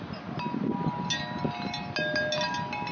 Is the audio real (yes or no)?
yes